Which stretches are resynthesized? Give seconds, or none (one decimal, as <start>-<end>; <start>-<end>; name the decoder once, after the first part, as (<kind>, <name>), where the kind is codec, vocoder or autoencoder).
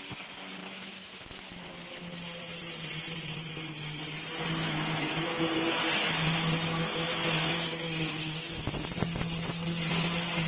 0.6-1.2 (autoencoder, DAC-VAE); 4.6-8.7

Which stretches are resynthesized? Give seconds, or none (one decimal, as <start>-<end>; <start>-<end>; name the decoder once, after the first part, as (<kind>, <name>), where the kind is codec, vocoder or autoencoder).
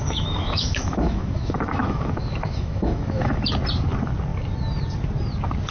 0.0-3.4 (autoencoder, DAC-VAE)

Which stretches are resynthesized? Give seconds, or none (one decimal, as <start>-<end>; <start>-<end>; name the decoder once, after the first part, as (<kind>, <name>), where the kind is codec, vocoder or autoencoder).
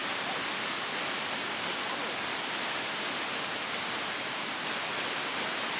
none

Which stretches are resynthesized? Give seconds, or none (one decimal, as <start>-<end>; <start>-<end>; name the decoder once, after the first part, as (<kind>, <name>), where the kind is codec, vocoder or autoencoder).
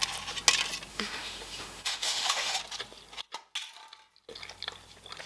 0.9-2.6 (autoencoder, DAC-VAE)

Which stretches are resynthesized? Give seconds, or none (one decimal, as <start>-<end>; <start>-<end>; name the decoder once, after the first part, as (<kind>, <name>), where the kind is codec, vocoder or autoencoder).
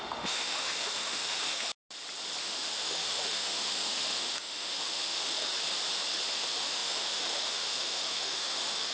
0.0-1.7 (autoencoder, DAC-VAE); 2.4-5.5; 6.3-8.9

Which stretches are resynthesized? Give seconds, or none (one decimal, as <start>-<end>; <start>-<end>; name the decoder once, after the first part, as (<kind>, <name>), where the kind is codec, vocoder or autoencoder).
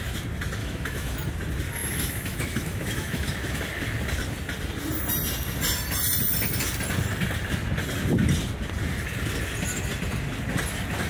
0.6-1.3 (autoencoder, DAC-VAE); 1.8-3.6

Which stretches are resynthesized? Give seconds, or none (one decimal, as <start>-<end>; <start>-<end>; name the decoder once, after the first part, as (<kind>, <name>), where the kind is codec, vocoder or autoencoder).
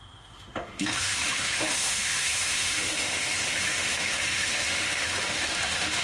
0.0-6.0 (autoencoder, DAC-VAE)